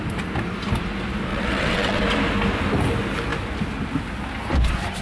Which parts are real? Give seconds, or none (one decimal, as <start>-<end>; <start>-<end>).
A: 0.0-1.3; 2.0-5.0